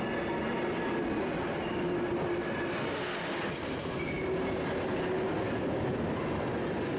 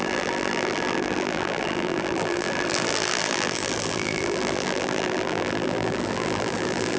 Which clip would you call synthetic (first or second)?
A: second